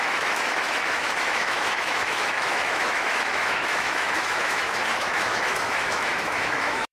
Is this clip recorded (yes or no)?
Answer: no